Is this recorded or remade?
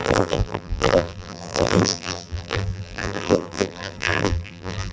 remade